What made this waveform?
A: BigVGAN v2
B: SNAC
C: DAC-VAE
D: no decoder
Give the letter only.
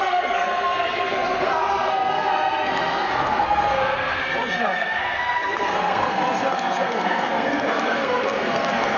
B